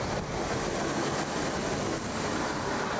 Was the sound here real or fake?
real